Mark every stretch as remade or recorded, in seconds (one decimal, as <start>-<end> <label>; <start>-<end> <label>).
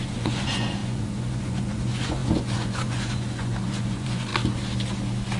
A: 0.0-4.3 remade; 4.3-5.4 recorded